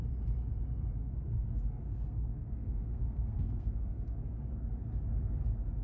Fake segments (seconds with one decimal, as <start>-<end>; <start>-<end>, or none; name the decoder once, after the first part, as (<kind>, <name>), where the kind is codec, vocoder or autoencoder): 1.0-4.5 (codec, SNAC)

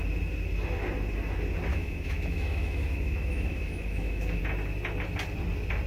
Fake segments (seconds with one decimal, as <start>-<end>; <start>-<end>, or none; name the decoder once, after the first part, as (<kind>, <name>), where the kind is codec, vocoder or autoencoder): 1.7-4.4 (autoencoder, DAC-VAE)

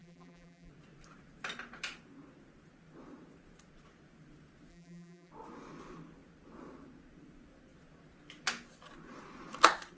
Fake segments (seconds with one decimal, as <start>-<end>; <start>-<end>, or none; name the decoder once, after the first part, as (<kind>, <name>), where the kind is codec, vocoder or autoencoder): 0.0-0.7 (vocoder, BigVGAN v2); 4.7-5.3

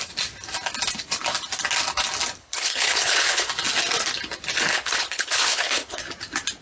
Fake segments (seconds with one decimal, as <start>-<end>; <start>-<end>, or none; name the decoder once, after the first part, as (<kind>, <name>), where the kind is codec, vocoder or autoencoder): 2.4-3.5 (codec, HILCodec); 4.7-6.0

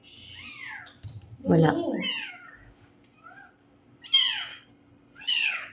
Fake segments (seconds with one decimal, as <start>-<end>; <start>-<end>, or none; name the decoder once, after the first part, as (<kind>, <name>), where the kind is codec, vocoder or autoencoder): 4.5-5.7 (codec, HILCodec)

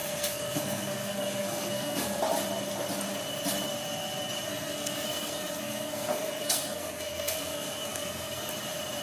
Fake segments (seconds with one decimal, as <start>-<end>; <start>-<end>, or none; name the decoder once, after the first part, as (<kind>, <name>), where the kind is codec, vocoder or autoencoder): 0.0-2.2 (codec, SNAC); 4.5-8.5

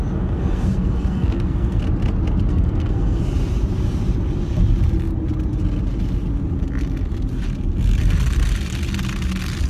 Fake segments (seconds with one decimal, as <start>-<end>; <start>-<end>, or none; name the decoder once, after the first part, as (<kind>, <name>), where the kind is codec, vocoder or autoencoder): 0.0-1.8 (codec, SNAC); 2.5-3.2